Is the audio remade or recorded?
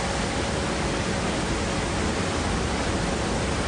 recorded